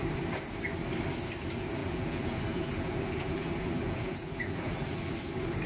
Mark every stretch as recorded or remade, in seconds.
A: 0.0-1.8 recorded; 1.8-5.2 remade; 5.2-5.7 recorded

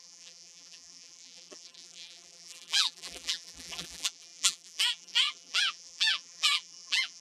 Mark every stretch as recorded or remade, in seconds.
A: 0.0-7.2 remade

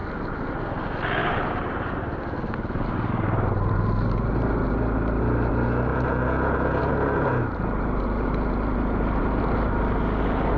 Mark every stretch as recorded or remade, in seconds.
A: 0.0-1.2 recorded; 1.2-1.9 remade; 1.9-10.6 recorded

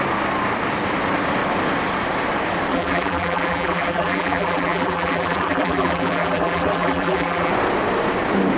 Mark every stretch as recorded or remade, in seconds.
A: 0.0-2.7 recorded; 2.7-7.5 remade; 7.5-8.6 recorded

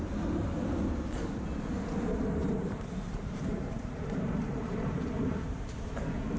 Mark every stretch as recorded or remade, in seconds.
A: 0.0-2.4 recorded; 2.4-6.0 remade; 6.0-6.4 recorded

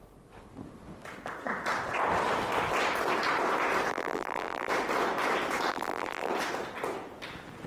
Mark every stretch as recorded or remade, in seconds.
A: 0.0-3.9 recorded; 3.9-4.7 remade; 4.7-5.7 recorded; 5.7-6.3 remade; 6.3-7.7 recorded